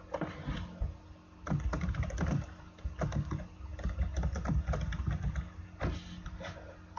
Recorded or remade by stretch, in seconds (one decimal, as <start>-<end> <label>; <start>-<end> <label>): 0.0-7.0 recorded